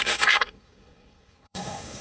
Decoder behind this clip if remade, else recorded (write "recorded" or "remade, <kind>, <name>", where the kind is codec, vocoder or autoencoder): remade, codec, SNAC